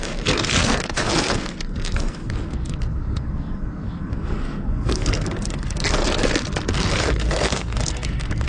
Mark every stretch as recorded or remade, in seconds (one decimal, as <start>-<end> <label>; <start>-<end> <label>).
0.0-6.0 remade; 6.0-6.7 recorded; 6.7-8.5 remade